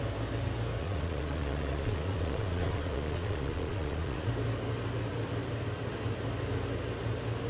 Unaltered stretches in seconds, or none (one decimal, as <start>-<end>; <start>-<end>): 0.0-0.8; 4.3-7.5